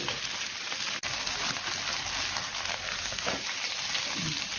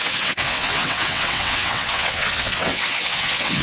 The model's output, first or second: second